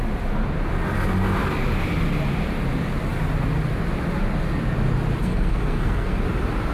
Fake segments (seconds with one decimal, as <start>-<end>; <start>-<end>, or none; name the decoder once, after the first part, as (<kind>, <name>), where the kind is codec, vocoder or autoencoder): 5.2-6.2 (codec, SNAC)